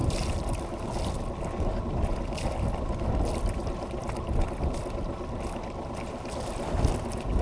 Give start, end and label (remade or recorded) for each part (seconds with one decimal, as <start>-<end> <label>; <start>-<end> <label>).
0.0-7.4 recorded